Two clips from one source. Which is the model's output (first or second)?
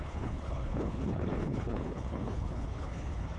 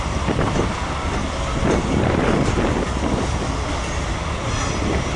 first